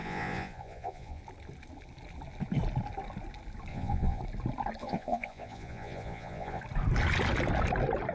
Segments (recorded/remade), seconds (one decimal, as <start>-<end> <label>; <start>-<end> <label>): 0.0-1.2 remade; 1.2-3.7 recorded; 3.7-4.2 remade; 4.2-4.8 recorded; 4.8-6.6 remade; 6.6-8.1 recorded